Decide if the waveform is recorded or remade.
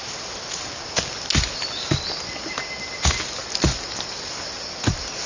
recorded